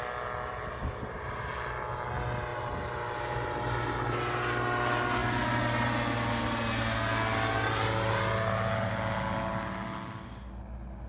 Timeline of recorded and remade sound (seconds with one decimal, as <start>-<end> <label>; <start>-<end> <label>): 0.0-0.8 recorded; 0.8-1.5 remade; 1.5-2.5 recorded; 2.5-4.2 remade; 4.2-11.1 recorded